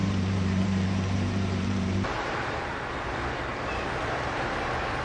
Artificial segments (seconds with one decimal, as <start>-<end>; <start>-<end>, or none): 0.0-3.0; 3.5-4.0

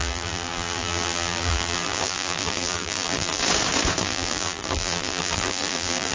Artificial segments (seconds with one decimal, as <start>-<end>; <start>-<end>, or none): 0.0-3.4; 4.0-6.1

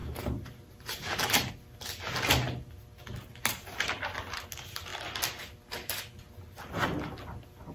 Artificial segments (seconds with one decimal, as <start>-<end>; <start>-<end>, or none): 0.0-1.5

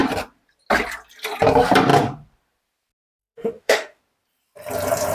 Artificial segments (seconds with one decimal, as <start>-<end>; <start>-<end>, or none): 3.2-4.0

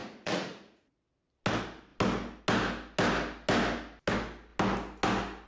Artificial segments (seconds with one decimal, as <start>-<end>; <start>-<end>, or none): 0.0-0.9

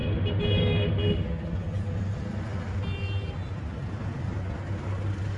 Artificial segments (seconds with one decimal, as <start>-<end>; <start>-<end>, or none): none